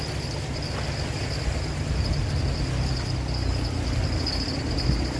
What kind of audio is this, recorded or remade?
recorded